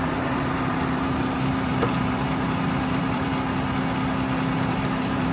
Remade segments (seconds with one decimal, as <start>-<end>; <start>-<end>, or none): 0.0-3.3; 4.7-5.3